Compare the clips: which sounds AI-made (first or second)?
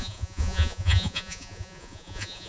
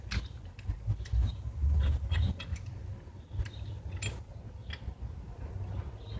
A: first